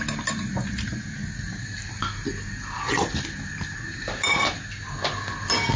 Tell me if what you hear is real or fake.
real